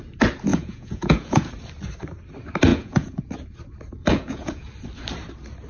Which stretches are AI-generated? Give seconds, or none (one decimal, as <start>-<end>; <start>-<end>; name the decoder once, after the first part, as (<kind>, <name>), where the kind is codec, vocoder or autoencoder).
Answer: 0.5-1.5 (vocoder, Vocos); 2.7-3.2; 4.0-4.7